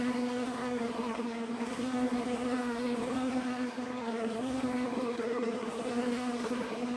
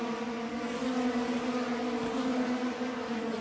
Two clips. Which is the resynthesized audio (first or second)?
first